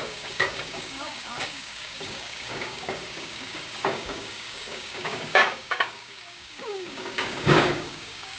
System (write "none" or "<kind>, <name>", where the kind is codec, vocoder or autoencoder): codec, DAC